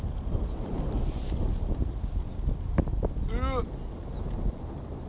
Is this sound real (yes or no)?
yes